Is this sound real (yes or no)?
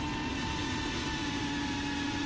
yes